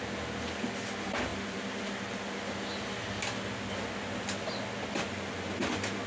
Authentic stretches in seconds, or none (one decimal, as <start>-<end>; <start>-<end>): 0.0-6.1